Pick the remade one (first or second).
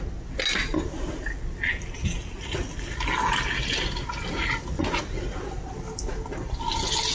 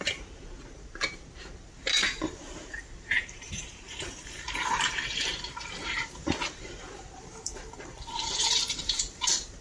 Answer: second